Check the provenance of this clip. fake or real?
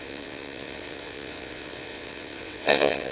fake